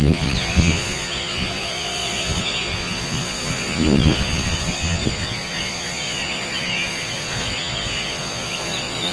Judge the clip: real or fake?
fake